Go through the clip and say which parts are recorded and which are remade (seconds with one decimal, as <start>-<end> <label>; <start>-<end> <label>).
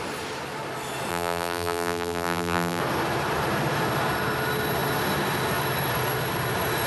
0.0-1.1 recorded; 1.1-2.8 remade; 2.8-6.9 recorded